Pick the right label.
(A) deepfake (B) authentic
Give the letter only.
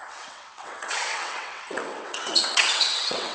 A